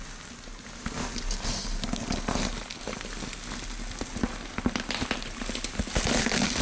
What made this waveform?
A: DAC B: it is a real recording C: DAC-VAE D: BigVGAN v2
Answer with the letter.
B